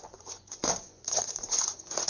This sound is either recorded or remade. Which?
remade